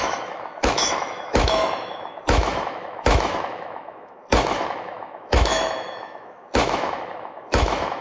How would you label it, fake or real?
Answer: fake